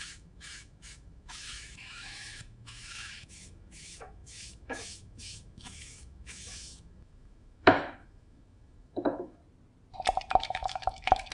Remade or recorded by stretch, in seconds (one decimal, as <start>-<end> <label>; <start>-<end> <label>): 0.0-9.4 remade; 9.4-10.3 recorded; 10.3-11.3 remade